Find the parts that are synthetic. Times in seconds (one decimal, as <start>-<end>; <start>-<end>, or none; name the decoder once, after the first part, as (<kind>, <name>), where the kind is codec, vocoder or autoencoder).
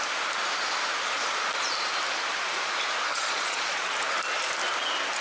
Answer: 3.1-3.9 (vocoder, Vocos)